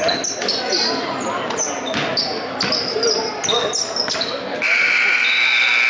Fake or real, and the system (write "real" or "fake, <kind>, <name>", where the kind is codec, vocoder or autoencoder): real